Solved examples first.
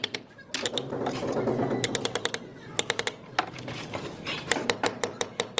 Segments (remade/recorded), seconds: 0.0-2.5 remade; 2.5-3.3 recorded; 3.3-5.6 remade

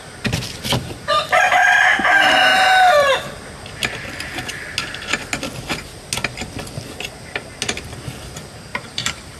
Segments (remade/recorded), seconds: 0.0-2.5 recorded; 2.5-3.3 remade; 3.3-8.7 recorded; 8.7-9.4 remade

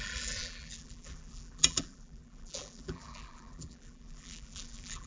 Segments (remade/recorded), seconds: 0.0-5.1 remade

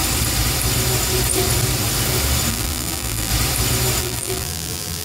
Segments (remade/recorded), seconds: 0.0-2.5 recorded; 2.5-3.3 remade; 3.3-4.0 recorded; 4.0-5.0 remade

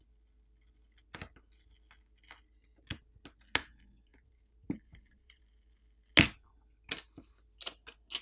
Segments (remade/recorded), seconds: 0.0-4.1 recorded; 4.1-5.4 remade; 5.4-8.2 recorded

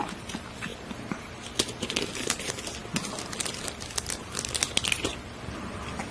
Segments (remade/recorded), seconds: 0.0-0.7 recorded; 0.7-2.4 remade; 2.4-6.1 recorded